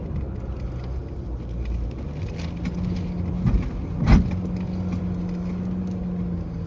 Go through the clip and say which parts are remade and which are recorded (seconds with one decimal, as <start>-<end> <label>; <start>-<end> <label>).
0.0-6.7 recorded